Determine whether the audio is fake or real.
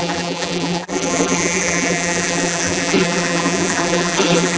fake